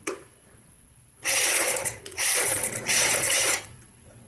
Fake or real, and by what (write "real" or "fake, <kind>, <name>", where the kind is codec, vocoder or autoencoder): fake, vocoder, Vocos